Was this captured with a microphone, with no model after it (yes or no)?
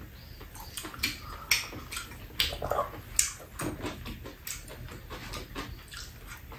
yes